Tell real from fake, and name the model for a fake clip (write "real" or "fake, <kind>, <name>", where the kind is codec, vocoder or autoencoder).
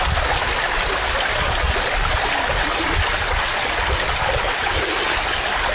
real